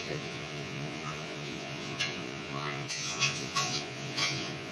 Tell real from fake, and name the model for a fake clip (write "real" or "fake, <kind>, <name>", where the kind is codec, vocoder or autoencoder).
fake, vocoder, Vocos